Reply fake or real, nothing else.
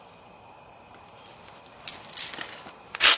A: real